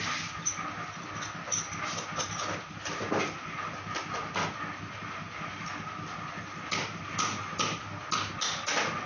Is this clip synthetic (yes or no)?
no